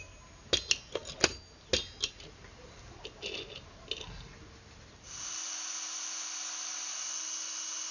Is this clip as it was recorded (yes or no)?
yes